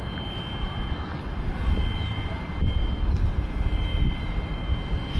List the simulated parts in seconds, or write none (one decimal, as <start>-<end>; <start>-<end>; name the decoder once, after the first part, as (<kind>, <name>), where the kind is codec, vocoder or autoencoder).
none